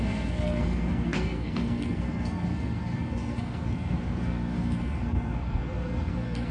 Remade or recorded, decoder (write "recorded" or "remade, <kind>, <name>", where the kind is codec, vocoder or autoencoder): remade, codec, SNAC